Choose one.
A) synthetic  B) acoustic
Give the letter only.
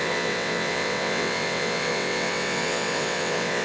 A